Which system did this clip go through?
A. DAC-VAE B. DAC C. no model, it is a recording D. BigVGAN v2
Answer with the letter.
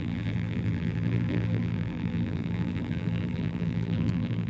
D